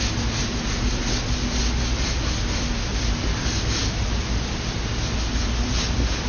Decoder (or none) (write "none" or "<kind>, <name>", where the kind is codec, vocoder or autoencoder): none